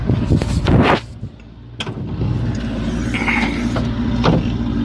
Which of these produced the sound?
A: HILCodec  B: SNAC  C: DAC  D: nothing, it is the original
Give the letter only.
D